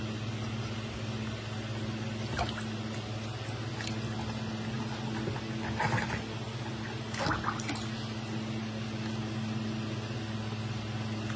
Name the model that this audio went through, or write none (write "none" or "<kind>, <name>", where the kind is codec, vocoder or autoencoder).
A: none